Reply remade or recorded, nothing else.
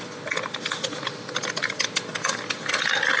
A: recorded